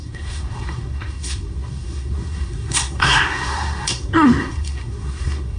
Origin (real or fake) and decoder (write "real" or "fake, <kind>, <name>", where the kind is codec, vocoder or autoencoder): fake, codec, SNAC